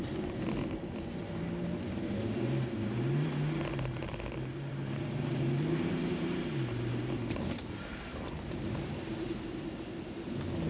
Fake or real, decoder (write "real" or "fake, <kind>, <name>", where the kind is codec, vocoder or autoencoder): fake, vocoder, BigVGAN v2